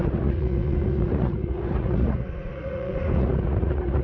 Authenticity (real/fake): fake